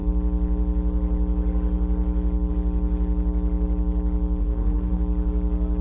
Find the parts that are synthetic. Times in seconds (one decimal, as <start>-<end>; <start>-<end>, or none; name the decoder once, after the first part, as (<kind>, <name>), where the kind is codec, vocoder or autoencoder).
4.4-5.0 (codec, SNAC)

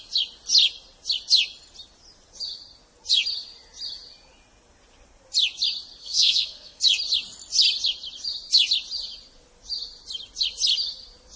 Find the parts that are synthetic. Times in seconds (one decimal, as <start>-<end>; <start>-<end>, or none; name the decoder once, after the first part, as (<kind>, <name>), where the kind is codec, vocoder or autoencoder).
6.0-6.8 (codec, SNAC)